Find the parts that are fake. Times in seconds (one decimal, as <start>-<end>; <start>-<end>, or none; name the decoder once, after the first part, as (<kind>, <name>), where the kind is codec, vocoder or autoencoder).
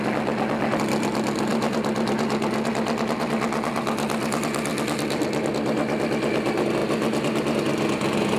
1.5-3.3 (vocoder, BigVGAN v2)